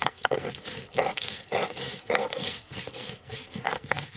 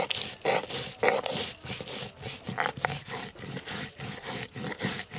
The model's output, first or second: first